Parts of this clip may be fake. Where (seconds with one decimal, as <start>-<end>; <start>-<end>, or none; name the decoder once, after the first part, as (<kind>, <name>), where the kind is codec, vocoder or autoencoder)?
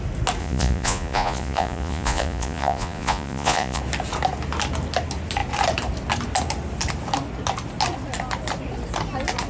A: 0.4-3.8 (vocoder, Vocos)